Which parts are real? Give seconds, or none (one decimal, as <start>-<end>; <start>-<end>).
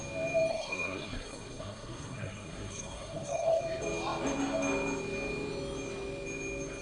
0.0-0.5; 3.6-6.8